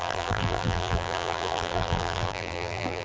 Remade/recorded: remade